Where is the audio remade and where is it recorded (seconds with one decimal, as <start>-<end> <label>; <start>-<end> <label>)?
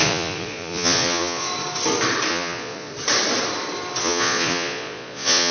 0.0-1.5 remade; 1.5-2.3 recorded; 2.3-2.9 remade; 2.9-4.0 recorded; 4.0-5.5 remade